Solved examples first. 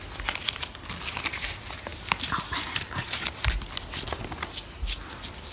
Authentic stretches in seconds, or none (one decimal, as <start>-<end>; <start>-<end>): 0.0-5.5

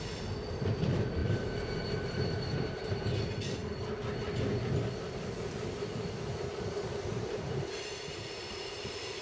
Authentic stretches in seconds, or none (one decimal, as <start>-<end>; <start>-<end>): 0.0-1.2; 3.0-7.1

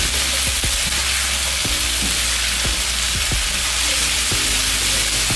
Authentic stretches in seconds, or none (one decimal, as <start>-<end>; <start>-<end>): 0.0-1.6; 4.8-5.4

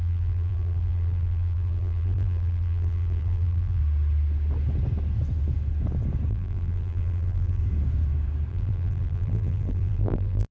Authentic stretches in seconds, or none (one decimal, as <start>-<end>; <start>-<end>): 3.8-6.3; 7.6-8.5

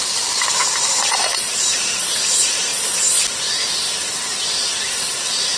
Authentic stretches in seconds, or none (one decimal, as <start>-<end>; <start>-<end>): 2.7-4.5

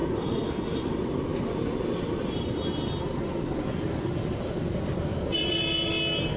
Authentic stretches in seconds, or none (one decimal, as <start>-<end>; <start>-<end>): 0.0-1.3; 3.6-5.1; 5.6-6.4